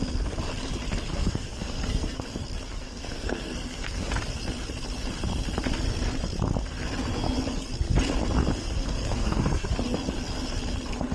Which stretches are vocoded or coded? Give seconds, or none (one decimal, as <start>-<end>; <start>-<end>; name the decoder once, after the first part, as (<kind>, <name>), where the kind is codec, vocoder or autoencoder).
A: 1.1-2.2 (codec, SNAC); 2.8-4.1; 8.6-9.7